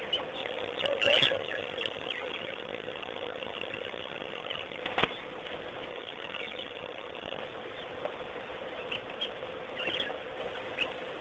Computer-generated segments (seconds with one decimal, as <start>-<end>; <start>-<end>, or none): 0.4-4.8; 5.9-7.4